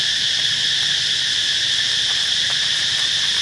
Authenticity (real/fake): real